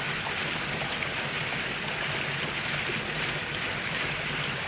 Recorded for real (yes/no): yes